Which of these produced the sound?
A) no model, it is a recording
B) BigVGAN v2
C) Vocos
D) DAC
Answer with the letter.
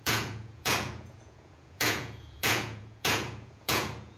C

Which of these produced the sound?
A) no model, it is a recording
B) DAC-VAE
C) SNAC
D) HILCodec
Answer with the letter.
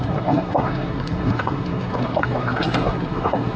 C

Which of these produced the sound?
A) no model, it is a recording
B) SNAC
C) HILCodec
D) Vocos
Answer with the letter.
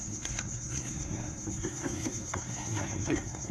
B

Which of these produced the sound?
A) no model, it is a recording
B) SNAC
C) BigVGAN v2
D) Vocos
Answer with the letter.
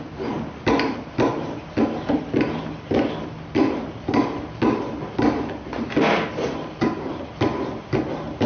A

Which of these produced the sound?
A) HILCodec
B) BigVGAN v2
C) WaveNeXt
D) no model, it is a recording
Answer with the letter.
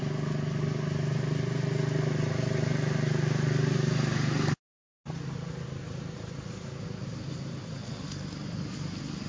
D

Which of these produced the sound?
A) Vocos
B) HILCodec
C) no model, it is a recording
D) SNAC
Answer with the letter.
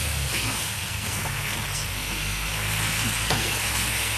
D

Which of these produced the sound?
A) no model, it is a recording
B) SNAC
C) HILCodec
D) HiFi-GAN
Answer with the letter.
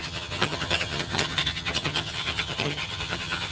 D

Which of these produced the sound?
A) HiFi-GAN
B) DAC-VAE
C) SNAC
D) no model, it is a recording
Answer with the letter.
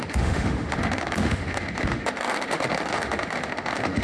B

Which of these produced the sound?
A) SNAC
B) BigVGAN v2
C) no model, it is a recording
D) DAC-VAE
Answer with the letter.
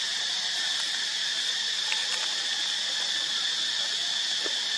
C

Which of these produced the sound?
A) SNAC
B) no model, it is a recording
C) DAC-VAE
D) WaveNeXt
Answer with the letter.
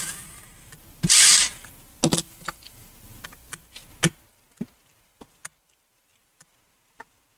B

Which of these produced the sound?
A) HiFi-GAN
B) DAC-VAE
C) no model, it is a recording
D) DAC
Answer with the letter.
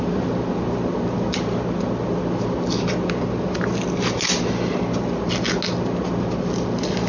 C